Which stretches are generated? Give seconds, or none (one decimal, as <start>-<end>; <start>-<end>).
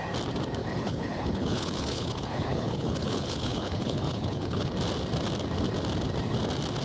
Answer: 0.6-4.7